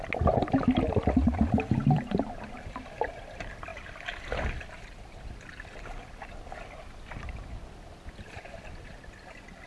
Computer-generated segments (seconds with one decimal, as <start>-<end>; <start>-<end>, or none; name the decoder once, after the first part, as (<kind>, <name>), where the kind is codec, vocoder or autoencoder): none